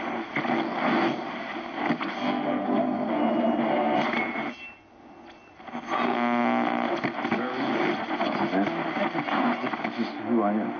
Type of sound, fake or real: real